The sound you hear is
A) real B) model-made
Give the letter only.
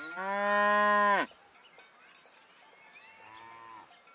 A